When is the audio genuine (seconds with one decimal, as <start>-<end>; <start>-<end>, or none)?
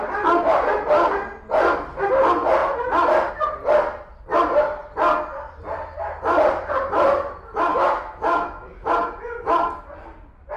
0.0-7.7; 8.9-10.6